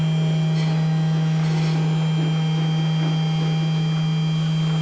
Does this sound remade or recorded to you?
recorded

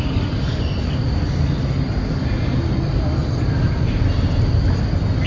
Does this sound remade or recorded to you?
recorded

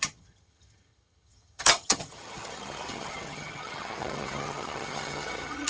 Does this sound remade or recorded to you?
remade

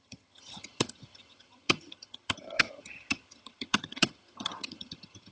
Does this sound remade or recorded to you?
remade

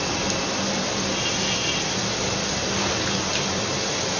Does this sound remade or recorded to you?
recorded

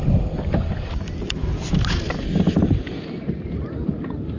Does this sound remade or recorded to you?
recorded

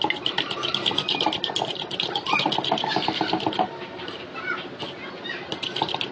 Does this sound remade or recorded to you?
recorded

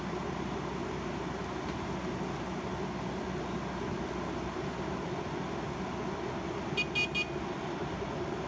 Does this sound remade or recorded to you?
recorded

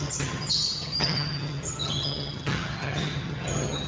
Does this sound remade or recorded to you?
remade